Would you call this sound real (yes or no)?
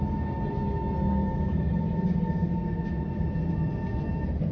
yes